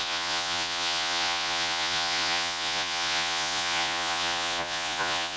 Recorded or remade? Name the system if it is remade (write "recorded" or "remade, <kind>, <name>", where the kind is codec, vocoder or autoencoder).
remade, vocoder, Vocos